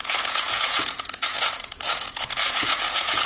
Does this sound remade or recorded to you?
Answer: remade